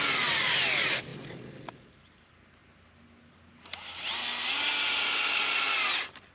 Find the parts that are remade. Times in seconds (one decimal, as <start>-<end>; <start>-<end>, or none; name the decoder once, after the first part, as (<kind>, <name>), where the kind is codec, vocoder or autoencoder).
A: none